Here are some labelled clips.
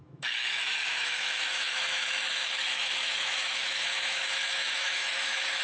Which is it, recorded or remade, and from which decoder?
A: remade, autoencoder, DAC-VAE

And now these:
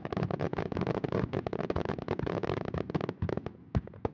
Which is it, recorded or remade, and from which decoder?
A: recorded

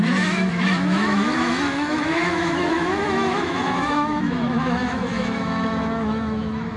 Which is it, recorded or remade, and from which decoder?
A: remade, autoencoder, DAC-VAE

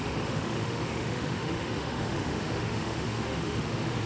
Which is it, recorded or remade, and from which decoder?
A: remade, autoencoder, DAC-VAE